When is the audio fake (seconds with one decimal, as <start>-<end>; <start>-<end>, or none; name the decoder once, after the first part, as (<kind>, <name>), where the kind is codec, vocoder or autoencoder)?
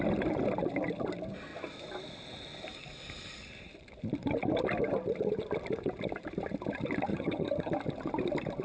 7.1-7.7 (vocoder, HiFi-GAN)